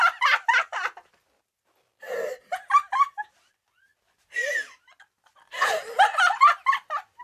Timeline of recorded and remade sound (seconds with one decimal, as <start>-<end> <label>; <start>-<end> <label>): 0.0-7.2 recorded

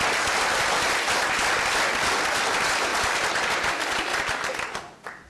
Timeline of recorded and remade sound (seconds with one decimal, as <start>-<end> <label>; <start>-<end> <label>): 0.0-5.3 recorded